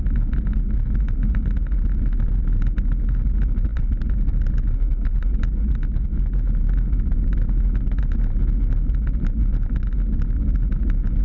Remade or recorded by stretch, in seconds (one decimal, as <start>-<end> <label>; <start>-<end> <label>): 0.0-11.2 recorded

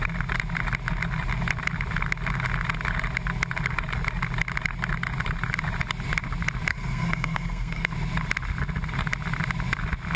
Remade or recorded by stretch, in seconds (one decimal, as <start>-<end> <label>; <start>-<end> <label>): 0.0-6.7 recorded; 6.7-7.9 remade; 7.9-10.2 recorded

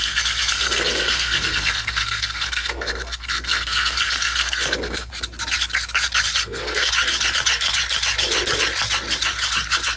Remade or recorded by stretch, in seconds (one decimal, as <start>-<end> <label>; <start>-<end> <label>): 0.0-5.1 remade; 5.1-6.4 recorded; 6.4-6.9 remade; 6.9-10.0 recorded

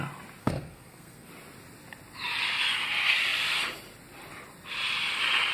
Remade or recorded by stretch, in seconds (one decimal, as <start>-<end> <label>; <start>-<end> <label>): 0.0-0.4 recorded; 0.4-1.3 remade; 1.3-5.5 recorded

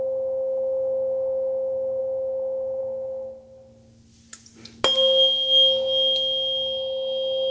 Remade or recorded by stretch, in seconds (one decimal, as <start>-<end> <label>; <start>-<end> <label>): 0.0-7.5 recorded

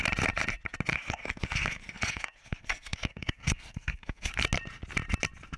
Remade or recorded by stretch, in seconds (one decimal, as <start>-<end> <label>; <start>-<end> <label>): 0.0-0.9 recorded; 0.9-4.3 remade; 4.3-5.6 recorded